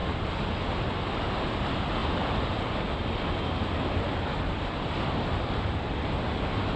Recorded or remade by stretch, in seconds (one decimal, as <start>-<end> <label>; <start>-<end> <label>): 0.0-6.8 recorded